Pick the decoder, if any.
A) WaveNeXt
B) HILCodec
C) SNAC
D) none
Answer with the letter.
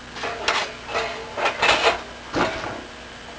D